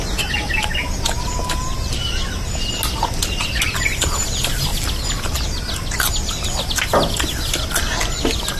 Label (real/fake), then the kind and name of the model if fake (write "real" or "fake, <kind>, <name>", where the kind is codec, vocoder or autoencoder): real